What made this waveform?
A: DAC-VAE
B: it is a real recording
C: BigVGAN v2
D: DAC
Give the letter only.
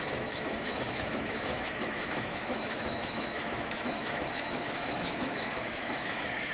A